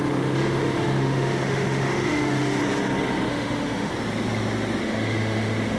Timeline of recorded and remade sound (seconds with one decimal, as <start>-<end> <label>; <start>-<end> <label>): 0.0-2.6 remade; 2.6-3.3 recorded; 3.3-3.9 remade; 3.9-4.8 recorded; 4.8-5.8 remade